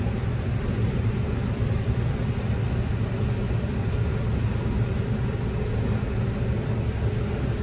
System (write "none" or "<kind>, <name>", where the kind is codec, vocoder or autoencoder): none